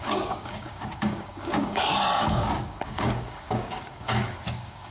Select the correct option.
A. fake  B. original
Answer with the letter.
A